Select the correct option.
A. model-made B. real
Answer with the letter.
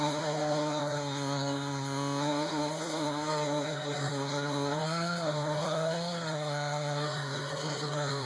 A